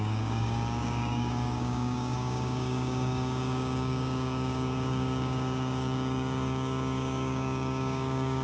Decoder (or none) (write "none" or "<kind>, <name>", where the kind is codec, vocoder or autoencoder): codec, DAC